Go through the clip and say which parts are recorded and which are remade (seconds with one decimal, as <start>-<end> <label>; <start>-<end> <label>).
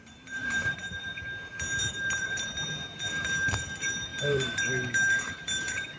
0.0-1.1 remade; 1.1-1.9 recorded; 1.9-6.0 remade